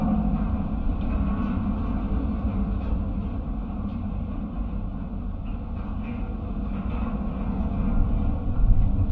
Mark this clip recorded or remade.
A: recorded